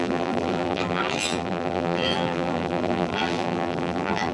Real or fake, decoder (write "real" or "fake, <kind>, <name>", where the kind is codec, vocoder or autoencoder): fake, vocoder, BigVGAN v2